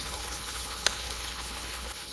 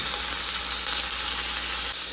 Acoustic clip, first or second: second